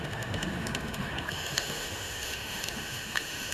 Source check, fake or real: fake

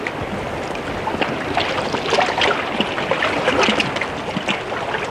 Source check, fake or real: real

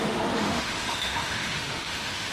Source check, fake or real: fake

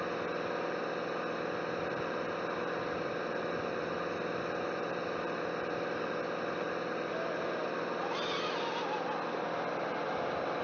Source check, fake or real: real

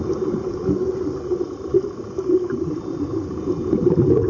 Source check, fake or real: real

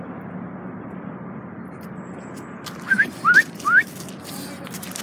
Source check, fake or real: real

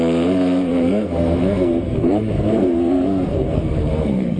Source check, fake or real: fake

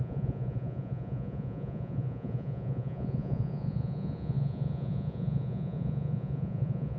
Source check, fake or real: fake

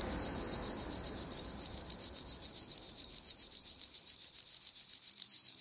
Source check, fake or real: fake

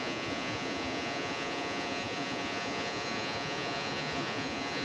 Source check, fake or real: fake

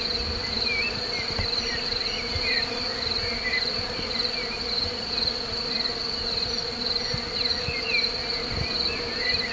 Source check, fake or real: real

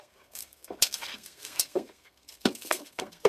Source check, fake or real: fake